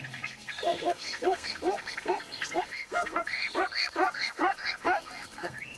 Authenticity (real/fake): fake